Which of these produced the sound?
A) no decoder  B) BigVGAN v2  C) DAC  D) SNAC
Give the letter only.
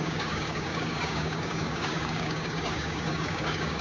C